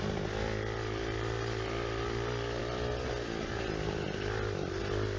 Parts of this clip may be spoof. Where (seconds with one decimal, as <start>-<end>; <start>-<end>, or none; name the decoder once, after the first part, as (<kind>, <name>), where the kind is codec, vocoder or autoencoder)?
none